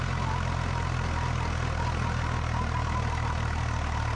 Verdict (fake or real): real